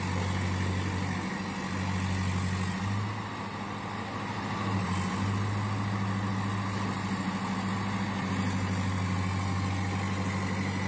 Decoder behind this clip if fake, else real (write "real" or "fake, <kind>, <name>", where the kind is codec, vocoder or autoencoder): real